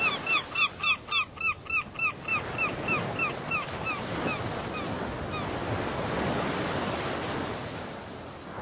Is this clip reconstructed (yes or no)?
no